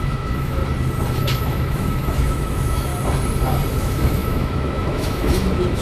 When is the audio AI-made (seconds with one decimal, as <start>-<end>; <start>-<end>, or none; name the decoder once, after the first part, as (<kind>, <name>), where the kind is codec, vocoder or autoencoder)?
0.0-0.6 (autoencoder, DAC-VAE); 1.2-2.9; 3.7-5.8